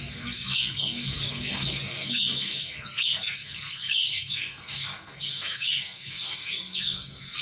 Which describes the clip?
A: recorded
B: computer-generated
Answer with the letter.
B